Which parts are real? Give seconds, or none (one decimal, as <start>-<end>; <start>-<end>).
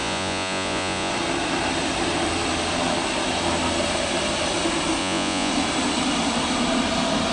1.1-5.0; 5.5-7.3